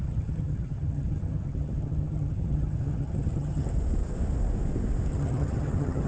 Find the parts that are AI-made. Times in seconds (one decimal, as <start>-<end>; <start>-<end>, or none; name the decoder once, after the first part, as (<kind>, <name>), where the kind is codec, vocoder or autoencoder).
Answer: 0.0-3.7 (vocoder, HiFi-GAN); 5.1-6.1